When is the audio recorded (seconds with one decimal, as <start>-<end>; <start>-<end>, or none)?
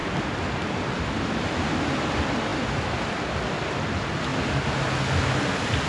0.8-2.5; 3.1-4.3; 5.4-5.9